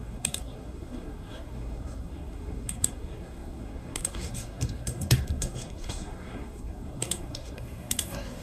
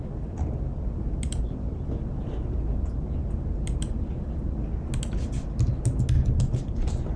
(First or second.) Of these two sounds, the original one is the second